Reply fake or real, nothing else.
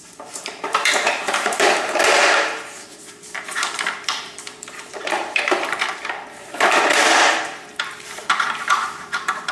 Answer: fake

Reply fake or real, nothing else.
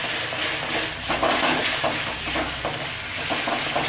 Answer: real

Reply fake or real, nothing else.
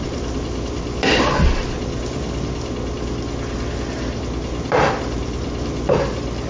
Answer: real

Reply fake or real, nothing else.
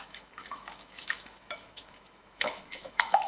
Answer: fake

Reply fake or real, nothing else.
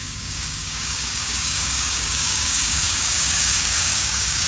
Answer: fake